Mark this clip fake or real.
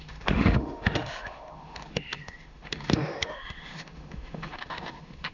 fake